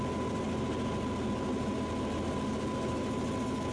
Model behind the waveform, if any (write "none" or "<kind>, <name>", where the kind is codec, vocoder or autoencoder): none